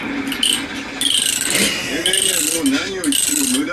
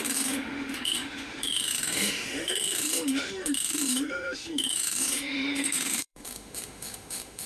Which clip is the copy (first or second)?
second